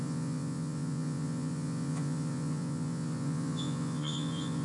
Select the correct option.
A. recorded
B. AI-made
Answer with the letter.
B